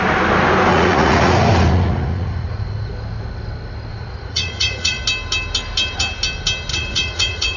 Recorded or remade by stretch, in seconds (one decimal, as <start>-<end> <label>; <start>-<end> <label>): 0.0-0.7 recorded; 0.7-2.9 remade; 2.9-3.9 recorded; 3.9-5.0 remade; 5.0-6.7 recorded; 6.7-7.6 remade